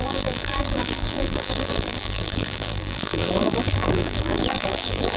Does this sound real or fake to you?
fake